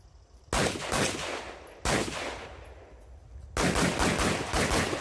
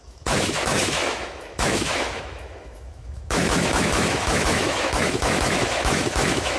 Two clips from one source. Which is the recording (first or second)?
first